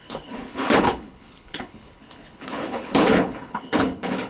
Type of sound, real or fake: fake